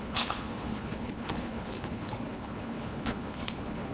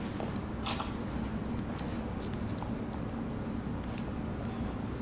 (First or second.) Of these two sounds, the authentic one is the second